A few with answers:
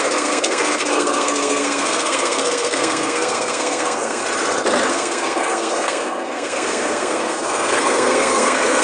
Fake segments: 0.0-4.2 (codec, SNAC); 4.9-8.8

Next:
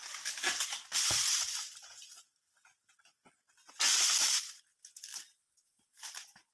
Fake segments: 0.0-6.5 (vocoder, BigVGAN v2)

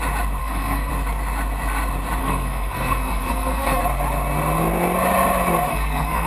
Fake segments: 0.4-0.9 (codec, SNAC); 2.2-3.8; 5.7-6.3

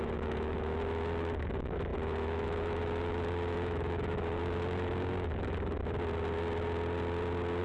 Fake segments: 0.0-5.8 (autoencoder, DAC-VAE)

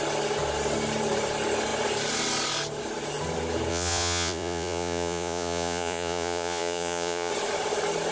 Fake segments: 3.7-7.3 (vocoder, Vocos)